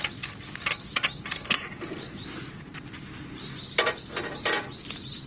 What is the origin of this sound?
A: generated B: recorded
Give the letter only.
B